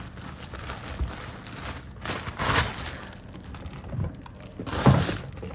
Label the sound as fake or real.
real